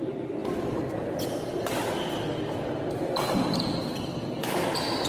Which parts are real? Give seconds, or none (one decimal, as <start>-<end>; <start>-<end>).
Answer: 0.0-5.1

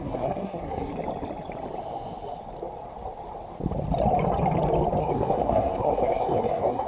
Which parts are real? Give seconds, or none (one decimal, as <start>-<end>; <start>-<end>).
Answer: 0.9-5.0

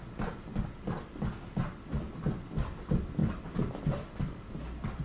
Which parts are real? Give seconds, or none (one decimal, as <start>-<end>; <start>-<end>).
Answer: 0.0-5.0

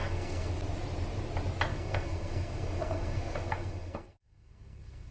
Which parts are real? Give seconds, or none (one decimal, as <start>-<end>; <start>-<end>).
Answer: 0.5-1.7

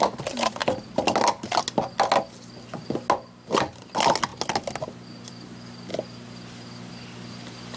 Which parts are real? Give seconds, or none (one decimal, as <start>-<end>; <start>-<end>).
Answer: 0.0-7.8